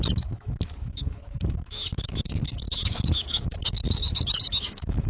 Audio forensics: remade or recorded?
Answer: remade